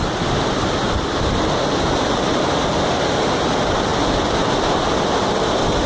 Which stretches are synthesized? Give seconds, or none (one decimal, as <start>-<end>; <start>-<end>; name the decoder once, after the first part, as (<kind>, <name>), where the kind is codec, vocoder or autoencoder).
none